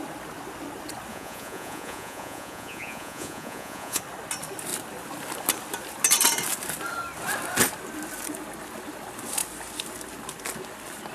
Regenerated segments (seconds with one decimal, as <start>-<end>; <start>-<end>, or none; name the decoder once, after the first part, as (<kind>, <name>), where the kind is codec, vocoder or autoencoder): 1.1-4.0 (vocoder, Vocos)